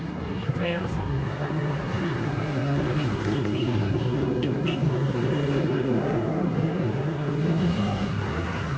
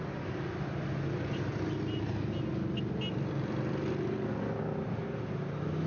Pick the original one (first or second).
second